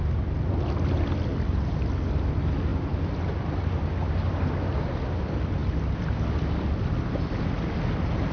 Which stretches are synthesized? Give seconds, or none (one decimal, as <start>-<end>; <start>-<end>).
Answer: none